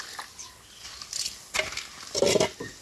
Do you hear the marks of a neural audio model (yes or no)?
no